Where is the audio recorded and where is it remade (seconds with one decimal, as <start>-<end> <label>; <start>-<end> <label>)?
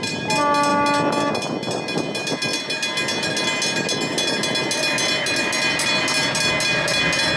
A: 0.0-7.4 recorded